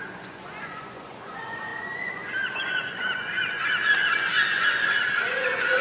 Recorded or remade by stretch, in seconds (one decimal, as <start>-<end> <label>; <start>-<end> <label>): 0.0-5.8 remade